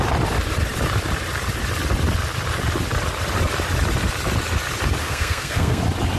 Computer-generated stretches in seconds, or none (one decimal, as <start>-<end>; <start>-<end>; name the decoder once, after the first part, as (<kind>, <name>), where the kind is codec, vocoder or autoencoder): 5.0-5.8 (codec, SNAC)